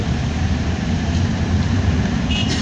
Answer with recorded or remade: remade